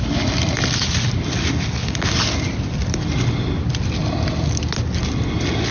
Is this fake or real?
real